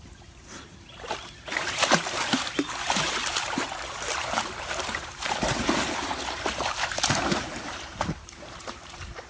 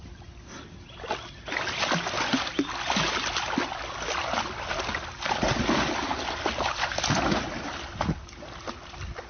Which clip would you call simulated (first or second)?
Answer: first